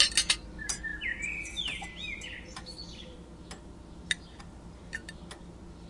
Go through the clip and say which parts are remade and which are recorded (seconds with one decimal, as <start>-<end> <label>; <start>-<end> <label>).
0.0-5.9 recorded